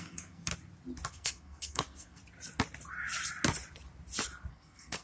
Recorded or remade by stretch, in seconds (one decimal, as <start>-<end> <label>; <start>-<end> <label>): 0.0-0.5 remade; 0.5-1.1 recorded; 1.1-2.2 remade; 2.2-4.5 recorded; 4.5-5.0 remade